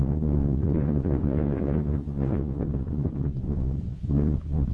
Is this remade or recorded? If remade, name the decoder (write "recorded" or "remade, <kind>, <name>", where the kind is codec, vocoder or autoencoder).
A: remade, vocoder, Vocos